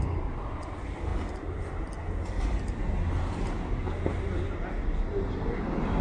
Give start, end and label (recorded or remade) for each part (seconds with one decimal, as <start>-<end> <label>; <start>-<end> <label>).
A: 0.0-6.0 recorded